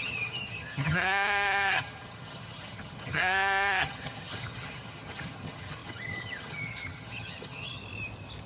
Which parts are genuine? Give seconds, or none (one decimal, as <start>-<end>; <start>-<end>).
7.8-8.5